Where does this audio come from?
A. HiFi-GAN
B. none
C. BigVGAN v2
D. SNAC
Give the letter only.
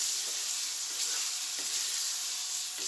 B